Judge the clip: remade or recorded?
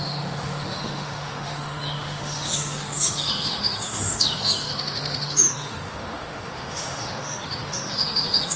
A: remade